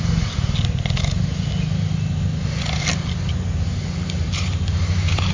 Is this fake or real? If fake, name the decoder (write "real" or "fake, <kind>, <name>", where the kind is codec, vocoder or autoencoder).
real